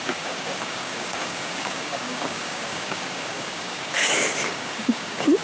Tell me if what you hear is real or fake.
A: fake